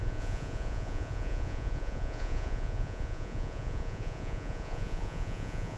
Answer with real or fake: fake